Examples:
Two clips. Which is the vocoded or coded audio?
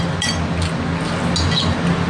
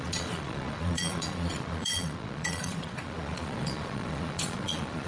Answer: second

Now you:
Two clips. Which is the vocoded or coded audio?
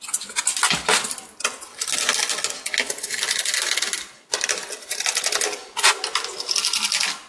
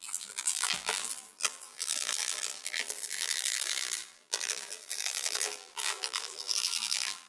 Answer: second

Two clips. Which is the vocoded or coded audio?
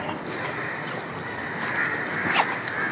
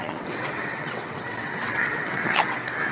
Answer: second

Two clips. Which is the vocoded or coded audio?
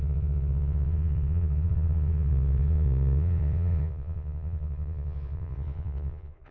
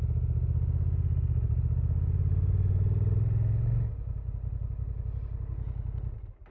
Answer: first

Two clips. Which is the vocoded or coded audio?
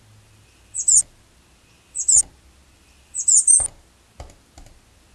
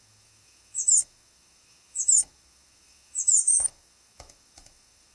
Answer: second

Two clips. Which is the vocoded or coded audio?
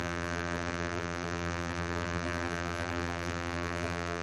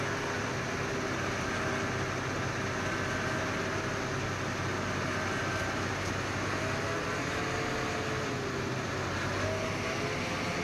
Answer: first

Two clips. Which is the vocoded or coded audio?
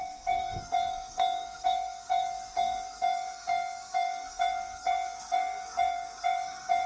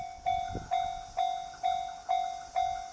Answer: first